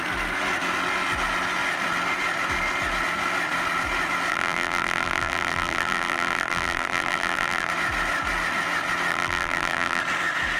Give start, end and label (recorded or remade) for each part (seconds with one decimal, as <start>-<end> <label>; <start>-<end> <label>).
0.0-4.3 recorded; 4.3-7.7 remade; 7.7-9.1 recorded; 9.1-10.0 remade; 10.0-10.6 recorded